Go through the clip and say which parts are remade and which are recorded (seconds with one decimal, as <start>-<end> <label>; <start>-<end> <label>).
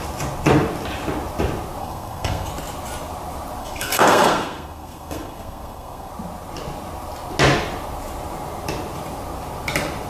0.0-1.8 recorded; 1.8-2.5 remade; 2.5-3.6 recorded; 3.6-6.1 remade; 6.1-10.1 recorded